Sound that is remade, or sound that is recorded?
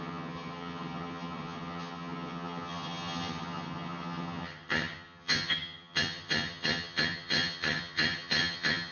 remade